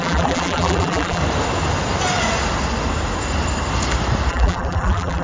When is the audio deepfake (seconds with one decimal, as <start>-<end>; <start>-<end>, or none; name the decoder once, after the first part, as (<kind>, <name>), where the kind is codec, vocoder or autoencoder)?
0.0-1.2 (vocoder, BigVGAN v2); 4.3-5.2